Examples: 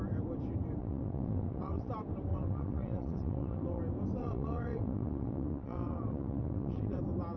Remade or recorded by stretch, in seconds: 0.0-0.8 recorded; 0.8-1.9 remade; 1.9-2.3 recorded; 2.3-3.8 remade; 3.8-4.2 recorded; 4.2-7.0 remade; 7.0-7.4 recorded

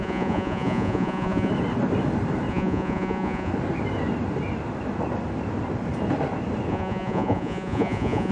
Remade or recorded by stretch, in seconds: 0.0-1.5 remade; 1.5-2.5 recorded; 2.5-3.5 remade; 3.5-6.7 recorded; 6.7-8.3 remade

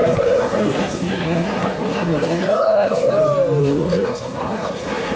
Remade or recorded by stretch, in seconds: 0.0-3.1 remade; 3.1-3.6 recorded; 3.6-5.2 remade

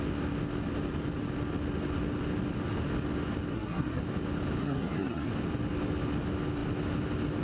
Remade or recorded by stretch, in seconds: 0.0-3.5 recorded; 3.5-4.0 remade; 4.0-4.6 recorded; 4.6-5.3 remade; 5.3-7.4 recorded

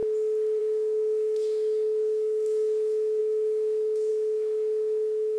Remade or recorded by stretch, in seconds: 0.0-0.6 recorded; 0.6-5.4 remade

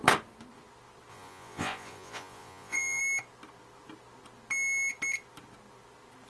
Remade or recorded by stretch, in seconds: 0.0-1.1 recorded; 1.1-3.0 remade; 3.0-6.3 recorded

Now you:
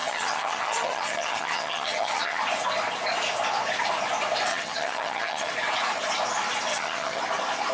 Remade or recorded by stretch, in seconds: 0.0-2.4 remade; 2.4-4.5 recorded; 4.5-5.5 remade; 5.5-6.7 recorded; 6.7-7.2 remade; 7.2-7.7 recorded

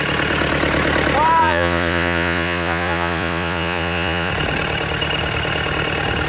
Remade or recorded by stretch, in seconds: 0.0-1.4 recorded; 1.4-4.3 remade; 4.3-6.3 recorded